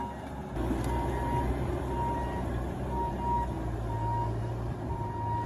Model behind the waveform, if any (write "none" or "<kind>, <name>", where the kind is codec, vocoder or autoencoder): none